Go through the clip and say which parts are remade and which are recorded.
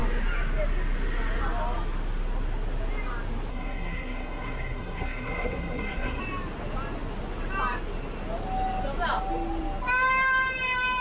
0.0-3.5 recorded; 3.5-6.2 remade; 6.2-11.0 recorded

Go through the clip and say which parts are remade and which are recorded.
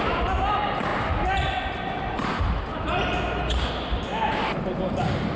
0.0-5.4 recorded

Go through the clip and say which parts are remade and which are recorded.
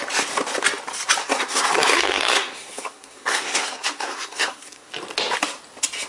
0.0-1.2 recorded; 1.2-4.9 remade; 4.9-6.1 recorded